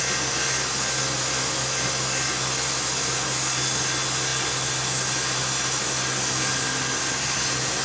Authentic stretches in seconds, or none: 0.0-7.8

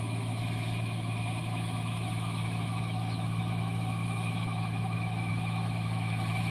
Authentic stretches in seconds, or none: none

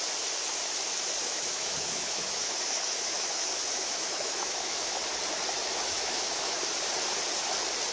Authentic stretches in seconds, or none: 0.0-1.2; 5.0-5.7; 6.6-7.9

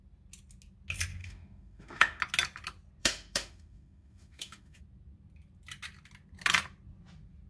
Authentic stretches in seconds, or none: 0.0-1.2; 2.2-3.0; 4.8-7.5

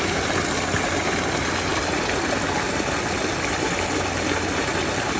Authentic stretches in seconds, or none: 0.0-5.2